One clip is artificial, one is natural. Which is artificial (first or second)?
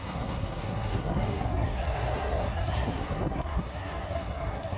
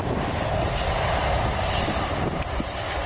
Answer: first